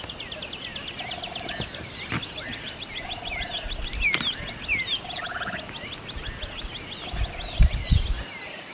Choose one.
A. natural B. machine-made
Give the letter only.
A